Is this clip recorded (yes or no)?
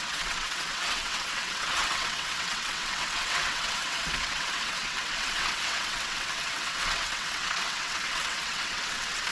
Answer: no